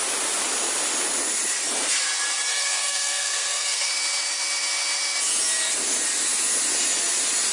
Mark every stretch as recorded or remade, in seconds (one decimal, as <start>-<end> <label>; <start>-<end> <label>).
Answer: 0.0-2.5 recorded; 2.5-3.9 remade; 3.9-7.5 recorded